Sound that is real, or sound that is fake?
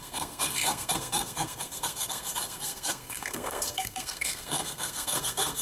fake